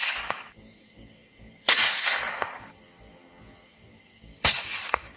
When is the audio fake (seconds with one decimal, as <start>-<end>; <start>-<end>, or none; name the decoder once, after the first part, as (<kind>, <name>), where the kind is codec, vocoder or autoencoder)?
0.0-5.2 (codec, DAC)